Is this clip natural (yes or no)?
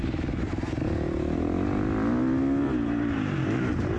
yes